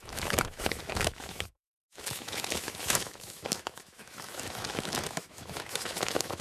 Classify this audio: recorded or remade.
remade